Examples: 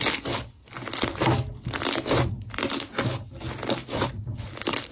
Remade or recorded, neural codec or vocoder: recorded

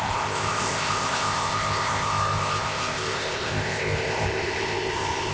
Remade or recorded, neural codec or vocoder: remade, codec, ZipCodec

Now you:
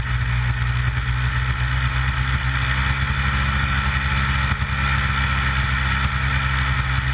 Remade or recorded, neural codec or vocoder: recorded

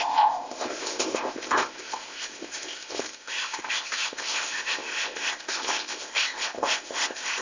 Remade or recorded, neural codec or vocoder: remade, codec, ZipCodec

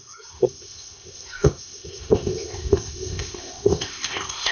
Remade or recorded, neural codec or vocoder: remade, codec, ZipCodec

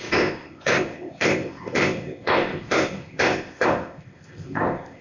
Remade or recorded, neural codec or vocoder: remade, codec, ZipCodec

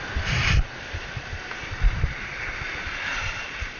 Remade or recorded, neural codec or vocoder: recorded